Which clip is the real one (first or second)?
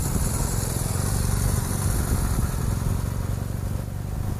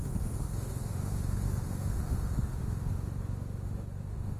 first